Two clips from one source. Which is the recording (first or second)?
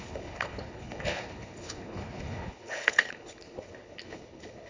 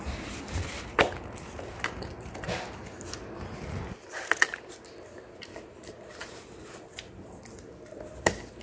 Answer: second